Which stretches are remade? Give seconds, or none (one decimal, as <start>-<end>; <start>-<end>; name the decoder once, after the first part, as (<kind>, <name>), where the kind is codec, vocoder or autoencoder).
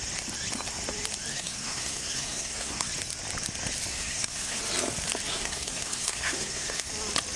1.3-2.9 (codec, SNAC); 3.9-4.6; 5.3-6.9